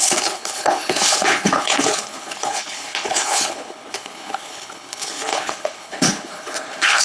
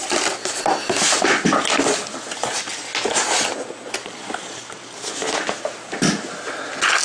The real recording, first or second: second